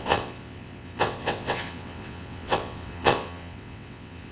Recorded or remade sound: remade